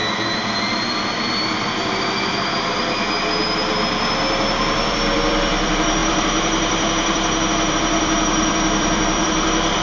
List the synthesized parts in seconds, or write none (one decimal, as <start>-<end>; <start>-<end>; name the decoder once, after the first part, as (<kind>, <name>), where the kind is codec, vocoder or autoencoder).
4.6-9.8 (vocoder, BigVGAN v2)